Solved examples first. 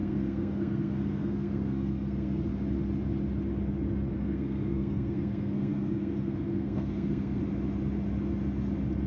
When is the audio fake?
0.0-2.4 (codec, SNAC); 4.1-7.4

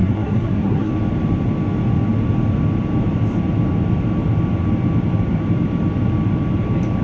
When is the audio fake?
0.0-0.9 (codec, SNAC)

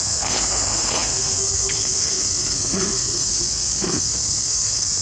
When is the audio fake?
0.0-5.0 (codec, SNAC)

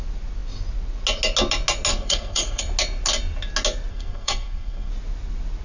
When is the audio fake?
1.9-2.6 (codec, SNAC); 3.9-4.9